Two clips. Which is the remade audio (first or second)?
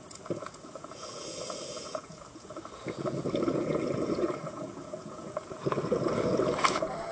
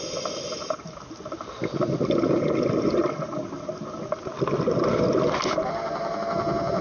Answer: first